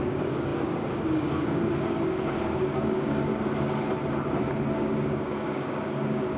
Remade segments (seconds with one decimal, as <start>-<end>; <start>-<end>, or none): 0.0-3.3; 4.7-6.4